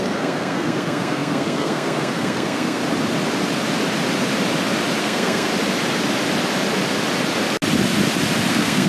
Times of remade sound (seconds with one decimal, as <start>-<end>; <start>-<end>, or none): 0.0-2.8; 5.0-5.5; 8.5-8.9